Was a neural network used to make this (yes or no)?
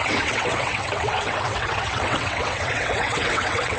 yes